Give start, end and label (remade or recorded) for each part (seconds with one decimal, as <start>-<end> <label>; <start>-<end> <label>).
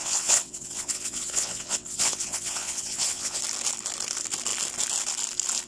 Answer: 0.0-3.4 remade; 3.4-5.7 recorded